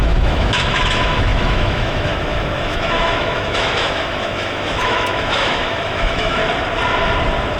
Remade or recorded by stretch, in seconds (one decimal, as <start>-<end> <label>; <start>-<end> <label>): 0.0-6.4 remade; 6.4-7.6 recorded